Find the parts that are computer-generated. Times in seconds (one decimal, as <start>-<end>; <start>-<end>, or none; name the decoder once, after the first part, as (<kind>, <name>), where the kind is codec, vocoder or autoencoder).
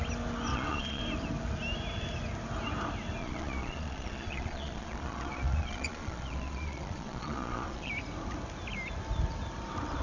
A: 0.5-1.0 (vocoder, Vocos); 3.2-7.9